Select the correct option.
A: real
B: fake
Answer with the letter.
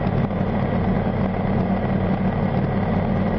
A